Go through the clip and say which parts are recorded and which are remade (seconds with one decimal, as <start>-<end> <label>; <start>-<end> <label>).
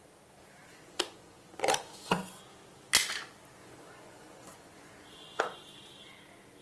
0.0-0.6 recorded; 0.6-2.4 remade; 2.4-3.6 recorded; 3.6-5.4 remade; 5.4-6.6 recorded